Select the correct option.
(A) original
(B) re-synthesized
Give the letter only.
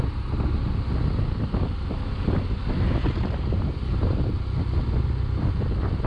A